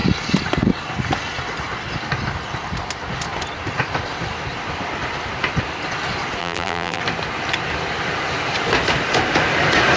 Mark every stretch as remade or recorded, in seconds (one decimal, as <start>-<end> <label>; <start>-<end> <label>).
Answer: 0.0-6.4 recorded; 6.4-7.0 remade; 7.0-10.0 recorded